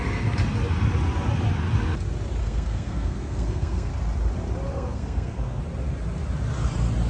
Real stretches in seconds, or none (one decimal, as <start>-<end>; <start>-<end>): 0.0-2.4; 3.9-4.7; 5.6-7.1

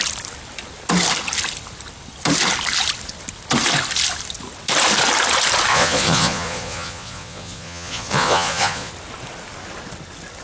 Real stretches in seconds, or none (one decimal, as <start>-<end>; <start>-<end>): 0.0-5.7; 8.9-10.4

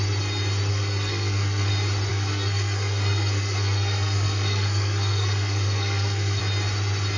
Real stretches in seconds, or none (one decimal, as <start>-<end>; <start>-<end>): 0.0-0.7; 1.7-2.1; 6.4-7.2

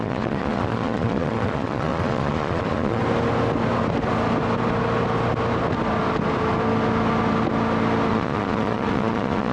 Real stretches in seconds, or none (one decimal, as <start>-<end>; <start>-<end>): 3.0-8.1

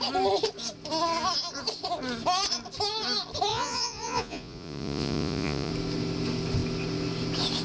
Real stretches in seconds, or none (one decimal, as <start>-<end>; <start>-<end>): 0.0-3.5; 5.7-7.6

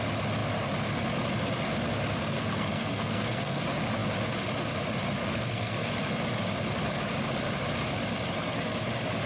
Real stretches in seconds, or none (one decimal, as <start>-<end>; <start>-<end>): 0.0-2.2; 3.6-5.2; 5.9-9.3

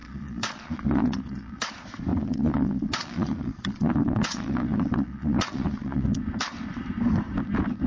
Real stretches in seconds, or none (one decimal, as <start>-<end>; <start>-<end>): 1.7-2.1; 6.2-7.9

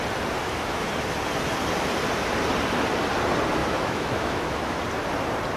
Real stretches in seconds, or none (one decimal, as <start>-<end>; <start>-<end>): 0.0-0.4; 0.9-3.6; 4.8-5.6